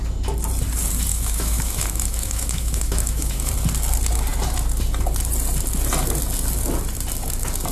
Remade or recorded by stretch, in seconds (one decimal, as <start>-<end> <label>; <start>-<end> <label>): 0.0-1.1 recorded; 1.1-3.5 remade; 3.5-7.7 recorded